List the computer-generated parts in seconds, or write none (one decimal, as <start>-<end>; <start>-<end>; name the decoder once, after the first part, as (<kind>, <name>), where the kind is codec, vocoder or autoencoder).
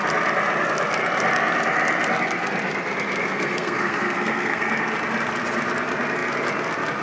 3.2-4.7 (codec, SNAC)